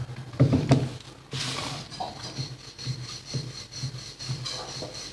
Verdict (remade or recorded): recorded